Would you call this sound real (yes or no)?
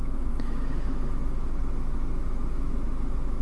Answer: no